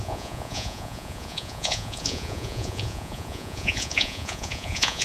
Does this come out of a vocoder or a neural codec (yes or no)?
yes